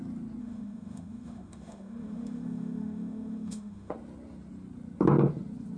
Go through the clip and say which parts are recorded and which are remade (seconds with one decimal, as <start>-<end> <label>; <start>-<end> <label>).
0.0-0.4 recorded; 0.4-3.9 remade; 3.9-5.8 recorded